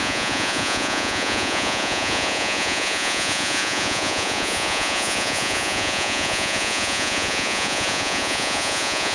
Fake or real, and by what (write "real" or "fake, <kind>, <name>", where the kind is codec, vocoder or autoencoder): fake, vocoder, Vocos